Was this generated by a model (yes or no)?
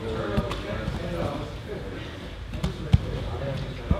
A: no